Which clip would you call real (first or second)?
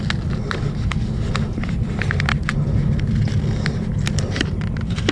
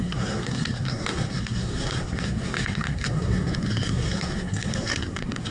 first